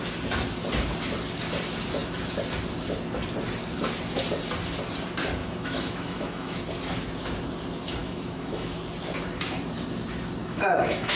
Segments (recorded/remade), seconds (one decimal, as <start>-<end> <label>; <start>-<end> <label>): 0.0-5.4 recorded; 5.4-6.6 remade; 6.6-8.0 recorded; 8.0-8.8 remade; 8.8-10.4 recorded; 10.4-11.2 remade